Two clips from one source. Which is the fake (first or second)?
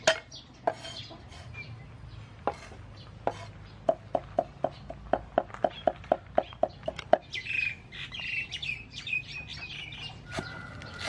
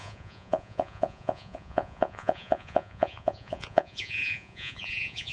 second